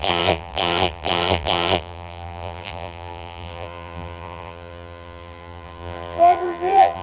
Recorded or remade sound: remade